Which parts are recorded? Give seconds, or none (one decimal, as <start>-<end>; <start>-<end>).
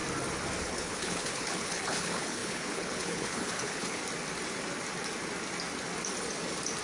0.0-0.6; 4.0-6.8